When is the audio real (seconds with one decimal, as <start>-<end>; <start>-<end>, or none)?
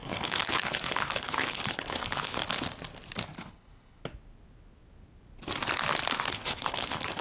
2.4-3.4; 4.0-6.3